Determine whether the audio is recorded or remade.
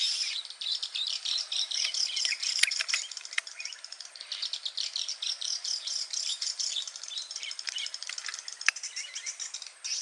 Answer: remade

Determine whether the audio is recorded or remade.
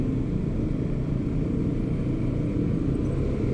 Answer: recorded